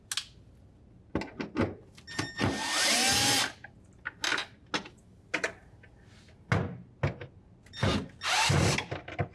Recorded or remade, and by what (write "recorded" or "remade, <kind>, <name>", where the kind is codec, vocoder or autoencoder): recorded